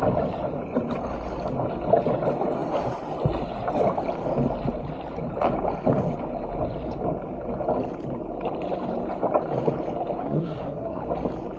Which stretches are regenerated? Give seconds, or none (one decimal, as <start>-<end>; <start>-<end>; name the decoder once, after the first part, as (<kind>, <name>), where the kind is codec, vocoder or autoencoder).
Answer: 10.2-11.0 (codec, SNAC)